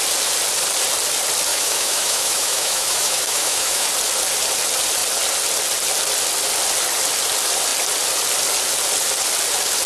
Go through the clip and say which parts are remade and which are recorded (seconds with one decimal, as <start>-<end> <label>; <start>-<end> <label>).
0.0-1.5 recorded; 1.5-3.9 remade; 3.9-9.9 recorded

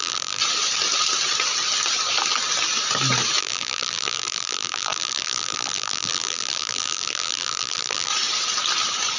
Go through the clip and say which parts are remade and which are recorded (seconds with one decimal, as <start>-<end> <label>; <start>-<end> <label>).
0.0-0.4 remade; 0.4-3.4 recorded; 3.4-8.1 remade; 8.1-9.2 recorded